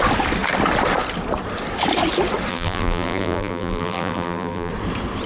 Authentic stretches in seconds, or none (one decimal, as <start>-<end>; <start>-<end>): 0.0-2.5; 4.7-5.3